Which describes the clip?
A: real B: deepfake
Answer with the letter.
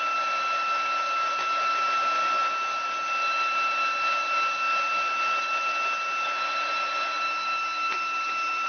A